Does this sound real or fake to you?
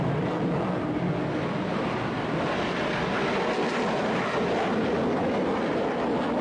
real